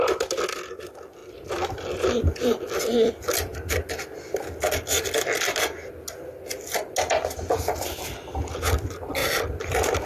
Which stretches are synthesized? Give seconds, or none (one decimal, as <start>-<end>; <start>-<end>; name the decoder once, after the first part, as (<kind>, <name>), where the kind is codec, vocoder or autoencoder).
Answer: 1.2-3.1 (vocoder, BigVGAN v2); 9.2-10.1

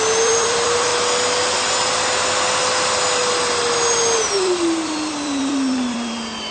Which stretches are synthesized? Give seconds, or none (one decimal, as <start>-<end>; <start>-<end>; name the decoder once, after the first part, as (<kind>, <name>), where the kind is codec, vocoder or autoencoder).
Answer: 0.0-0.9 (vocoder, BigVGAN v2); 4.4-6.5